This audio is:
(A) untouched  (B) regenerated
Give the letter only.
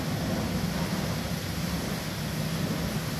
A